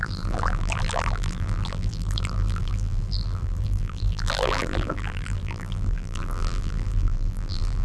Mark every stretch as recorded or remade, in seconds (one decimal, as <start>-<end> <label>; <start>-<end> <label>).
0.0-7.8 remade